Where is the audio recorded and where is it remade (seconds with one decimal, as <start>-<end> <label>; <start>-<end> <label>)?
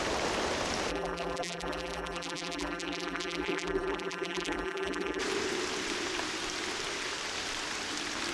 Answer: 0.0-0.9 recorded; 0.9-5.2 remade; 5.2-8.3 recorded